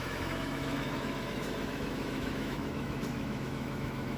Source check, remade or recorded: remade